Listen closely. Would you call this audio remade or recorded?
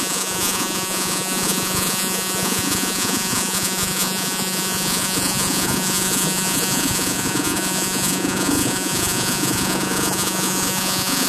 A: remade